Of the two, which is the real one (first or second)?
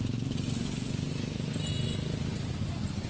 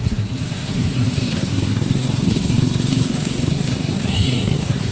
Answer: first